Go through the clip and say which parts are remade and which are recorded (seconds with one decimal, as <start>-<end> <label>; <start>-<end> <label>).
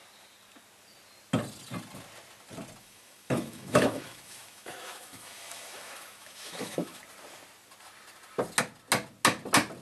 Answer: 0.0-2.8 recorded; 2.8-7.0 remade; 7.0-9.8 recorded